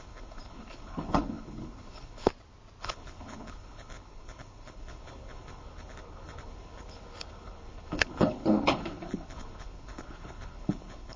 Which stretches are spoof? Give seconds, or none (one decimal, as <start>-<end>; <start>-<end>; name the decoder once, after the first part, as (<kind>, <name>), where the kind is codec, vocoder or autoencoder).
0.0-2.3 (codec, HILCodec); 2.8-11.2